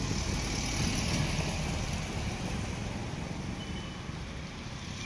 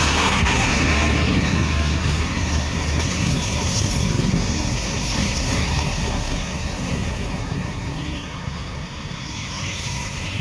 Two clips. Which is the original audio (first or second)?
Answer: first